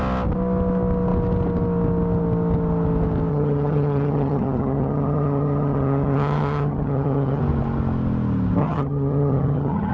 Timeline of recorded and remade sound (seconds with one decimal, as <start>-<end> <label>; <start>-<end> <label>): 0.0-3.3 recorded; 3.3-7.4 remade; 7.4-8.6 recorded; 8.6-9.9 remade